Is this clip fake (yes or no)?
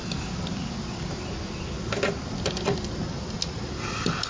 no